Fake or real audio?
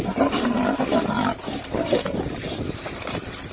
real